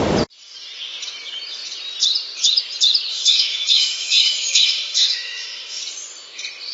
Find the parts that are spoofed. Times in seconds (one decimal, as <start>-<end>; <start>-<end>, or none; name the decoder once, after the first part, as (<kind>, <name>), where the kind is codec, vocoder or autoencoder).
3.1-5.8 (autoencoder, DAC-VAE)